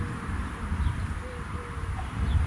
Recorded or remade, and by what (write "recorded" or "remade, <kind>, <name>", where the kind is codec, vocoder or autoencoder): recorded